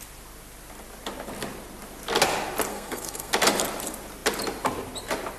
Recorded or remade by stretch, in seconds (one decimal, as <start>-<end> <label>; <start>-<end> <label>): 0.0-2.7 recorded; 2.7-3.3 remade; 3.3-5.4 recorded